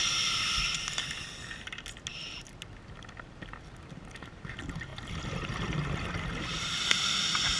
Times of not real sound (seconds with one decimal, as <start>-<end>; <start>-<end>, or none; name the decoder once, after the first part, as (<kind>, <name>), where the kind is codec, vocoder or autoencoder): none